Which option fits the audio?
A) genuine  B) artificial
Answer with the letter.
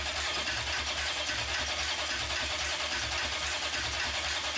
A